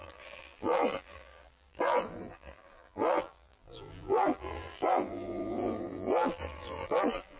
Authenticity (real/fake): fake